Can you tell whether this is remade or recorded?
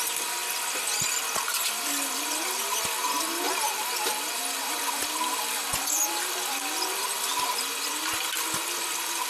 recorded